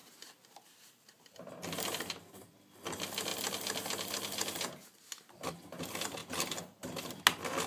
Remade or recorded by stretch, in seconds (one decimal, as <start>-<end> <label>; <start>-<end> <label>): 0.0-1.5 remade; 1.5-6.2 recorded; 6.2-6.8 remade; 6.8-7.7 recorded